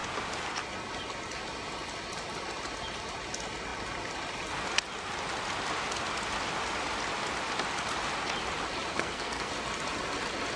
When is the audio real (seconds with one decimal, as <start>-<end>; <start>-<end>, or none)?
0.0-8.9; 9.5-10.6